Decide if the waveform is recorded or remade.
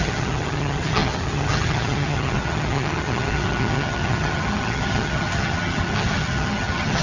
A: remade